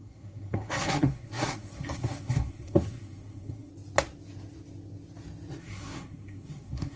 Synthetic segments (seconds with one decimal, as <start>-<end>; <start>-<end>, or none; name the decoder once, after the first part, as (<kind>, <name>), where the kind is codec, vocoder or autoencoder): 0.0-3.7 (codec, SNAC); 5.6-7.0